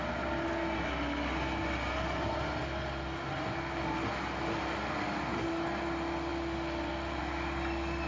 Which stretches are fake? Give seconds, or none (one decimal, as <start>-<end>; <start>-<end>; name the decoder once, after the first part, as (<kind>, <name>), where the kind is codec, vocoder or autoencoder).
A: none